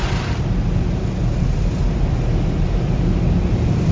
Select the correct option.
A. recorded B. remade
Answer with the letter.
A